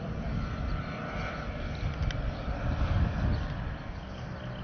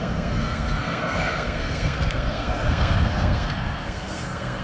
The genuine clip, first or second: first